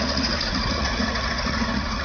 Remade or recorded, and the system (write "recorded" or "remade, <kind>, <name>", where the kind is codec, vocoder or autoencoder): remade, vocoder, Vocos